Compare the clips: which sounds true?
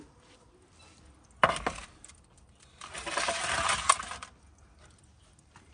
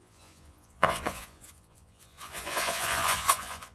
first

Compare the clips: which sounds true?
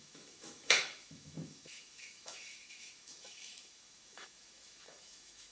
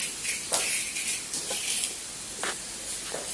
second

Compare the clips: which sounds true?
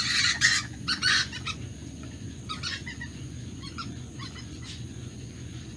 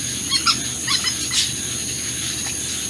second